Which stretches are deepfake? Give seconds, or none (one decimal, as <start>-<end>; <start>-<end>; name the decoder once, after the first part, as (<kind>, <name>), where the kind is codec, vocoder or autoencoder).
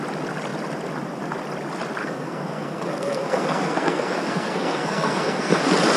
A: 2.0-5.6 (codec, SNAC)